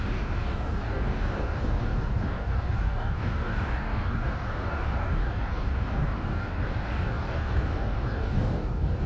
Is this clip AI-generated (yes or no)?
yes